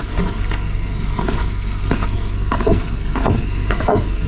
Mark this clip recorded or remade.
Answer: remade